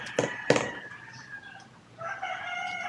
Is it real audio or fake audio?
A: real